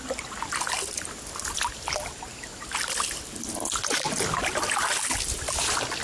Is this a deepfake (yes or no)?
no